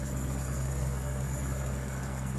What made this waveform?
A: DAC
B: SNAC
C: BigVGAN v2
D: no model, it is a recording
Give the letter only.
B